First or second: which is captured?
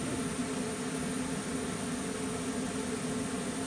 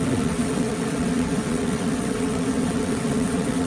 first